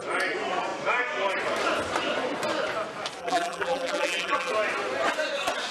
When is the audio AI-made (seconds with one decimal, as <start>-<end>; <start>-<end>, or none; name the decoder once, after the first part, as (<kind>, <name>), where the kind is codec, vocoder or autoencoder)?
3.2-4.5 (vocoder, BigVGAN v2)